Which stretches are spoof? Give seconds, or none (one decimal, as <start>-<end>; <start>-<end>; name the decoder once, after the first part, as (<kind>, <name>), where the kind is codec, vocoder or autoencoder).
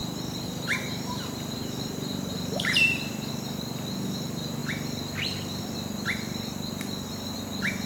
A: 0.0-3.3 (vocoder, BigVGAN v2)